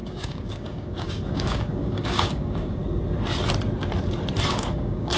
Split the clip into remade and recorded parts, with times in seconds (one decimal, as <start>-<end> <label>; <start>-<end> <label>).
0.0-2.8 remade; 2.8-4.5 recorded; 4.5-5.2 remade

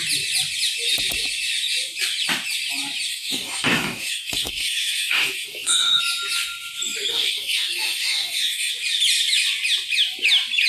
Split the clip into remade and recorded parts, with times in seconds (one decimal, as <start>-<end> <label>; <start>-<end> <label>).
0.0-3.1 recorded; 3.1-6.0 remade; 6.0-7.1 recorded; 7.1-8.7 remade; 8.7-10.7 recorded

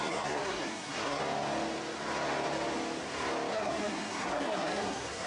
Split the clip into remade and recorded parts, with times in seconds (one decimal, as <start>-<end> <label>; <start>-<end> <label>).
0.0-1.2 remade; 1.2-3.5 recorded; 3.5-5.3 remade